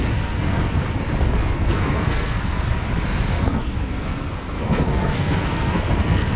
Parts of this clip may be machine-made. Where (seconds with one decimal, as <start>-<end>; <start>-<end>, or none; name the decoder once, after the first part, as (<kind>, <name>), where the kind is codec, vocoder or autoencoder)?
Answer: 0.0-0.8 (codec, SNAC); 1.3-2.5; 3.3-6.4